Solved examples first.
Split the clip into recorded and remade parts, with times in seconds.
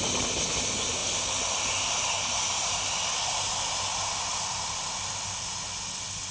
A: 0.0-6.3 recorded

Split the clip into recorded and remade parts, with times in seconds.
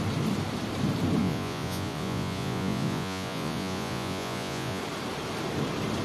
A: 0.0-1.2 recorded; 1.2-4.8 remade; 4.8-6.0 recorded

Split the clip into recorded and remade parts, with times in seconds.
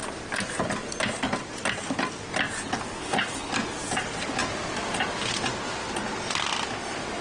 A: 0.0-3.0 recorded; 3.0-3.5 remade; 3.5-7.2 recorded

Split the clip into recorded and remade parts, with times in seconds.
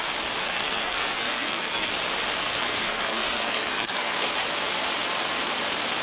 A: 0.0-0.4 recorded; 0.4-1.9 remade; 1.9-2.4 recorded; 2.4-4.1 remade; 4.1-6.0 recorded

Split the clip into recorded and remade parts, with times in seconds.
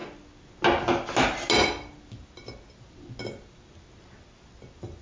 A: 0.0-5.0 recorded